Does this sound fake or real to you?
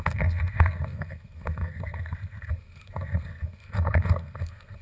fake